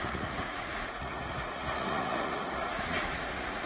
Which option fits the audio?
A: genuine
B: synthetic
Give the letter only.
B